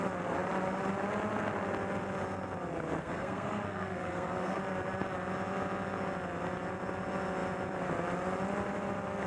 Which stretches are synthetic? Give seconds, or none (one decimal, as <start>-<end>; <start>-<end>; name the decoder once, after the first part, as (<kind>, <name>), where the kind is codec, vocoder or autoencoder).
3.0-4.6 (codec, SNAC)